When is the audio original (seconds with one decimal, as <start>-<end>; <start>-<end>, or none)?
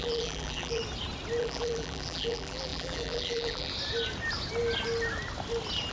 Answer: 0.8-1.4; 3.7-5.9